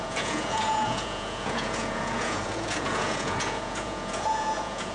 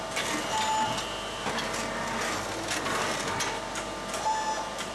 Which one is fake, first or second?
first